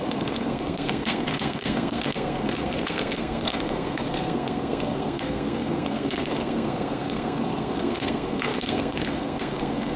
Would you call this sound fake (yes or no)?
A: yes